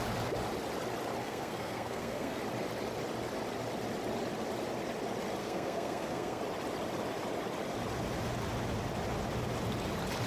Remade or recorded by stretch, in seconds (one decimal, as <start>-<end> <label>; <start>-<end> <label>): 0.0-1.2 recorded; 1.2-2.4 remade; 2.4-5.4 recorded; 5.4-6.4 remade; 6.4-10.3 recorded